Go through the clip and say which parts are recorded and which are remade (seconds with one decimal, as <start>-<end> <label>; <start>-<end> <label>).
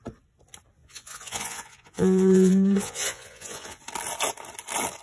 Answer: 0.0-0.8 recorded; 0.8-3.8 remade; 3.8-5.0 recorded